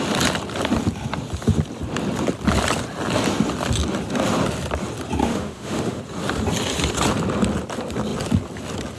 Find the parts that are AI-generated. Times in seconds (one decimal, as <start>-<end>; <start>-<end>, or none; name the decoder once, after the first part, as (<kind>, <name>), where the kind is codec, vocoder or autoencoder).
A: 5.2-6.0 (autoencoder, DAC-VAE)